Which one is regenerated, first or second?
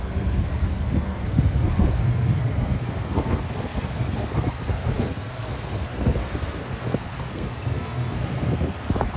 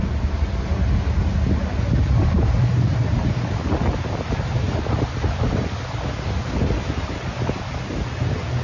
first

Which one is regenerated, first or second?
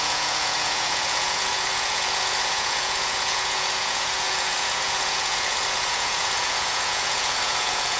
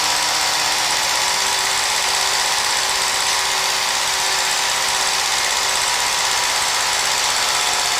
first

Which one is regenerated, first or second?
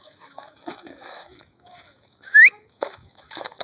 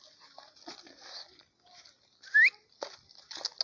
first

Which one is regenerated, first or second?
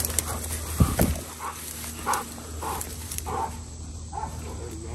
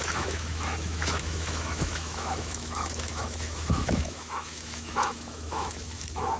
second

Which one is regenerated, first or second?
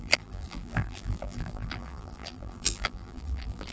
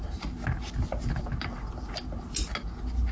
first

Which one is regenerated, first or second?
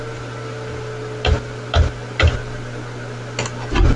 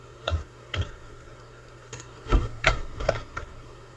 second